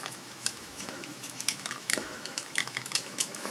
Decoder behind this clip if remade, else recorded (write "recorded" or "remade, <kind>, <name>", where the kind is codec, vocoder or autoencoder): remade, autoencoder, DAC-VAE